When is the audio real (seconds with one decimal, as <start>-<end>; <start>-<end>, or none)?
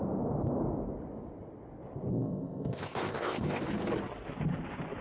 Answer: 0.0-2.1; 3.6-5.0